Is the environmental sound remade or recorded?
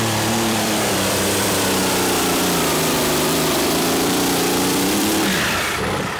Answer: remade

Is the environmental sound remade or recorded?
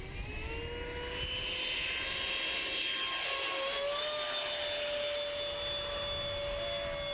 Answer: recorded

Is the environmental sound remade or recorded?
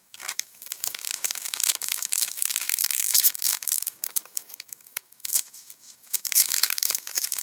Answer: remade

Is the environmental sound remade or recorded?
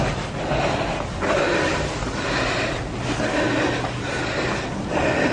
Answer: recorded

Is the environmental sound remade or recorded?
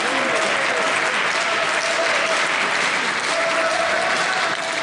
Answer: recorded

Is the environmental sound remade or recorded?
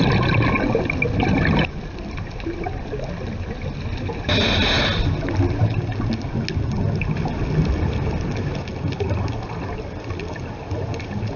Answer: recorded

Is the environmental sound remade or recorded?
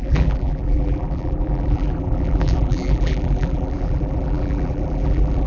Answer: remade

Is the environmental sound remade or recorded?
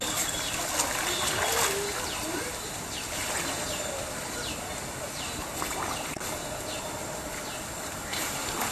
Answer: recorded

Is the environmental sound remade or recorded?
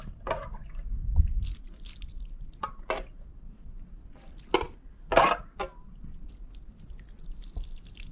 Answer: recorded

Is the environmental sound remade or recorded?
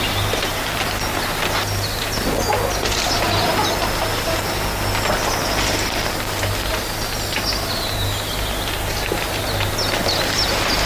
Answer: recorded